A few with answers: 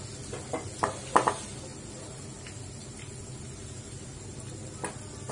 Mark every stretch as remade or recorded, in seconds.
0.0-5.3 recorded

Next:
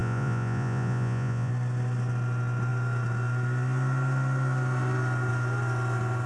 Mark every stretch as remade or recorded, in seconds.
0.0-1.5 remade; 1.5-6.3 recorded

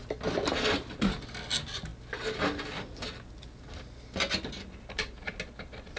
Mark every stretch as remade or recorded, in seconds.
0.0-6.0 recorded

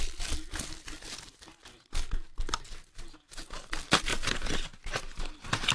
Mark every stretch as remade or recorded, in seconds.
0.0-5.7 recorded

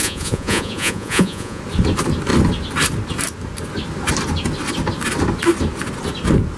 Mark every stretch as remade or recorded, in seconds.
0.0-1.6 remade; 1.6-6.6 recorded

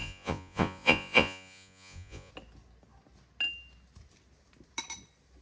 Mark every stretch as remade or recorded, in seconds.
0.0-2.3 remade; 2.3-5.4 recorded

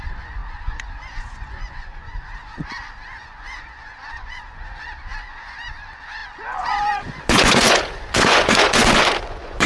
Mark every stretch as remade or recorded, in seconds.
0.0-9.7 remade